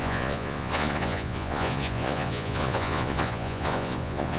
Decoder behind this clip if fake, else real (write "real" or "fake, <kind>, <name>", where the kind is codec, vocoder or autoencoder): fake, vocoder, Vocos